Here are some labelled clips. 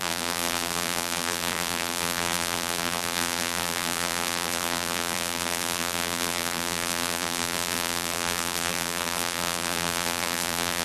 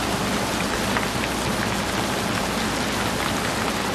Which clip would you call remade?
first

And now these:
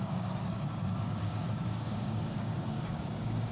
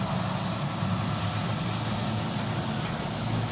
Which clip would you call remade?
first